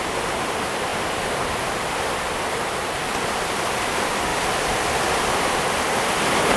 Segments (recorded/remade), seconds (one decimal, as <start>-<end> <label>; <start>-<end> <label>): 0.0-0.9 recorded; 0.9-3.7 remade; 3.7-4.3 recorded; 4.3-6.6 remade